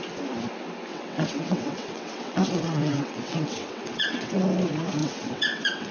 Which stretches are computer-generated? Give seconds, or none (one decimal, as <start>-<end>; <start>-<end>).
0.9-4.4; 5.0-5.9